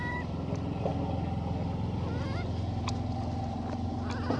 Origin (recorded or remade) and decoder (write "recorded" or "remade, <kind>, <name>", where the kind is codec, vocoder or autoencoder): recorded